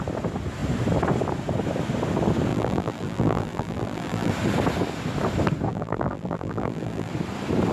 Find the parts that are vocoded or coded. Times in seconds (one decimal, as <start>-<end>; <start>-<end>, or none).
2.5-4.3; 5.7-7.1